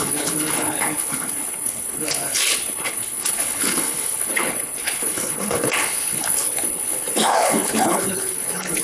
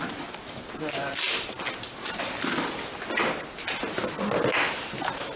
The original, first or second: second